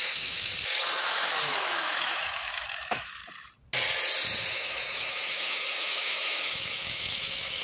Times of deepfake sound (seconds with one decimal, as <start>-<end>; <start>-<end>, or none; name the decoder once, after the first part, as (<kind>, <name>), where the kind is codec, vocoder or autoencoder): 0.0-0.5 (autoencoder, DAC-VAE); 1.0-3.2; 4.5-7.6